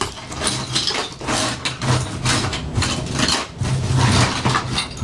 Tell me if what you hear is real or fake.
real